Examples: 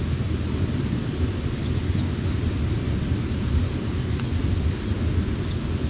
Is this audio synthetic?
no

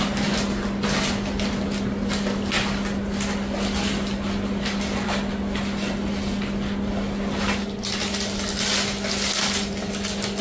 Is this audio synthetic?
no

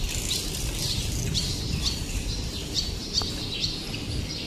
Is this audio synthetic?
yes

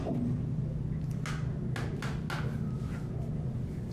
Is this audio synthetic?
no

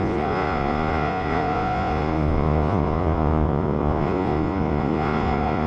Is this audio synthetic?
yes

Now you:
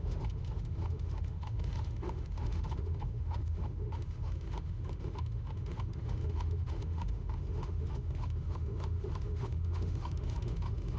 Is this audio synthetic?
yes